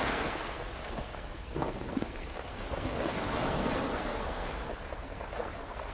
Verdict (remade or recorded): remade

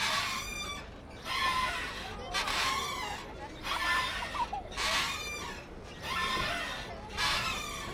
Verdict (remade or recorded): recorded